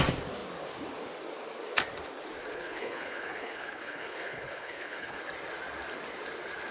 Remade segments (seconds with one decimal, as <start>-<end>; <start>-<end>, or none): 2.5-5.2